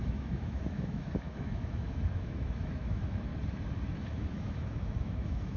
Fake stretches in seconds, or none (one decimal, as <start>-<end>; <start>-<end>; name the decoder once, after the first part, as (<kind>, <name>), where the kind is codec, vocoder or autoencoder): 0.0-3.3 (autoencoder, DAC-VAE); 4.0-5.6